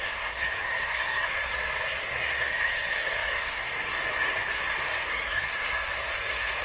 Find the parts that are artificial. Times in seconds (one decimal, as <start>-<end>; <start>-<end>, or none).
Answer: 0.0-1.5; 2.0-6.6